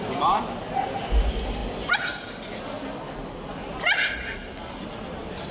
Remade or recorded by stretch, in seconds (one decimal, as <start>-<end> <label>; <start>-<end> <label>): 0.0-5.5 recorded